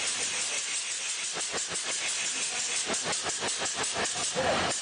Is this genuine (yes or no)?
yes